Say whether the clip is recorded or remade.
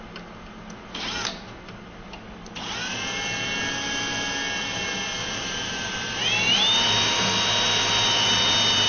recorded